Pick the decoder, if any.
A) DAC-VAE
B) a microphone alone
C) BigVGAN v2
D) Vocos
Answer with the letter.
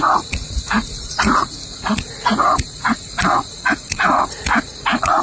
D